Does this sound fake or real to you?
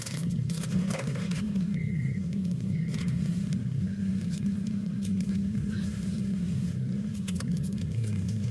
fake